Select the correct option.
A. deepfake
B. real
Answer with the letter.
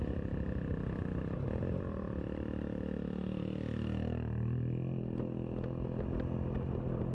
B